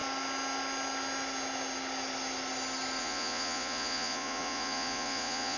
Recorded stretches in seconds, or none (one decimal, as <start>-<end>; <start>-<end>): 0.0-3.0